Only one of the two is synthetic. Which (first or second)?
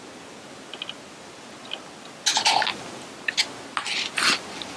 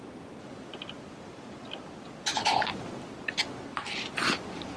second